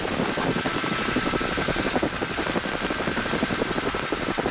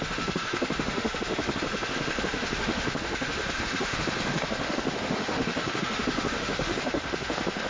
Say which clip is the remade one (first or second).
second